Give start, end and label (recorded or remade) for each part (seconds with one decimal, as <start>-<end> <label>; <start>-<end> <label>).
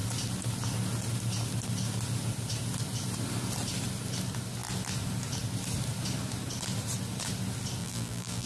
0.0-7.8 recorded; 7.8-8.5 remade